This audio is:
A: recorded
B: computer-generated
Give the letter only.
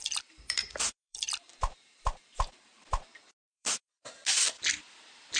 B